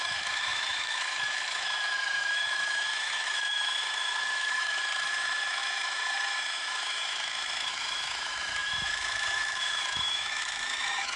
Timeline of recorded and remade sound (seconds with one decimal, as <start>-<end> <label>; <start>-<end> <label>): 0.0-11.2 remade